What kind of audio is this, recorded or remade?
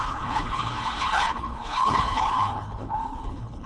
remade